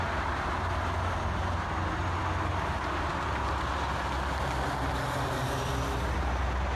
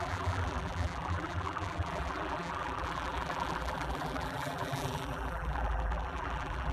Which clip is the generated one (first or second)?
second